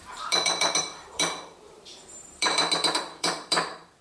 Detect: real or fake fake